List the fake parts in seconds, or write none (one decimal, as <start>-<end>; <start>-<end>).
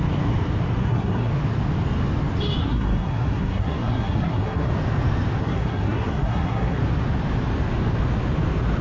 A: 0.8-1.3; 2.6-4.7; 5.4-6.8